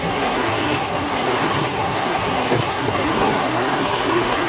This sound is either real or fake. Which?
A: fake